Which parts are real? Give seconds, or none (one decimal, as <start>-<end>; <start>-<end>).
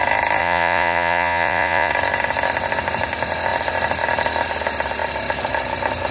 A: 0.0-0.4; 1.9-6.1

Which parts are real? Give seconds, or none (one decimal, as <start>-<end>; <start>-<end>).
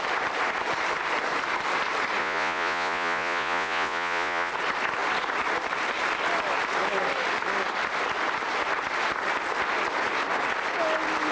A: 0.0-2.2; 4.5-11.3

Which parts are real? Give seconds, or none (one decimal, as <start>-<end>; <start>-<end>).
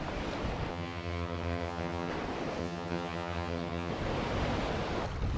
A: 0.0-0.7; 2.1-2.6; 3.9-5.4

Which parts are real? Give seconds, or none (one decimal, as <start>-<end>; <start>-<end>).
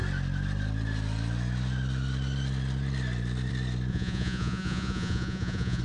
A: 0.0-3.9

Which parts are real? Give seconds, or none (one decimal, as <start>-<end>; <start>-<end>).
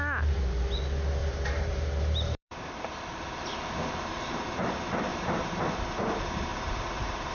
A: 0.0-1.2; 3.4-5.1; 5.6-6.5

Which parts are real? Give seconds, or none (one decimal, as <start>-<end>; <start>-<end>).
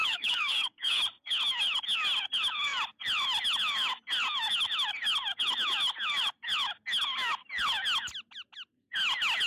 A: 1.0-9.5